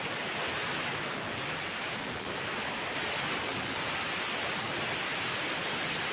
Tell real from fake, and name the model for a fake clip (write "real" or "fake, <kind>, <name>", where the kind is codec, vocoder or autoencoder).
real